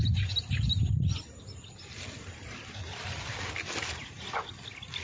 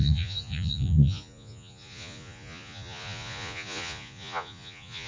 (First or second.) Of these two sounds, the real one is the first